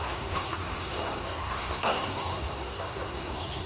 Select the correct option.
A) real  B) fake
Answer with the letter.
B